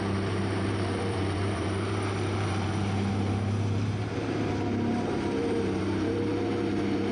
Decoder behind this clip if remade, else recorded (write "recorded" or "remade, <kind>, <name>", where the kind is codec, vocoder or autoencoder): remade, vocoder, BigVGAN v2